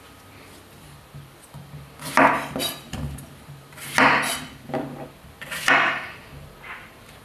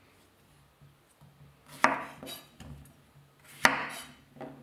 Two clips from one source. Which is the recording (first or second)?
second